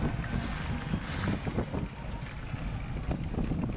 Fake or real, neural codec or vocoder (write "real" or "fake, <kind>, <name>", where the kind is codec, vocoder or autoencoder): real